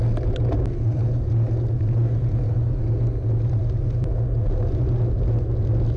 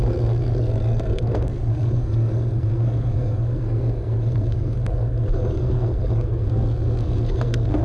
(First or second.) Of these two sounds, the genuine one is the first